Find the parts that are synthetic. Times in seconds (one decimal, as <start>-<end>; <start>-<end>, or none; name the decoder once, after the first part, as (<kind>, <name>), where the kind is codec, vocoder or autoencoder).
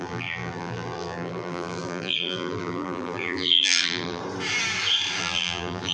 0.0-4.2 (vocoder, BigVGAN v2); 5.2-5.9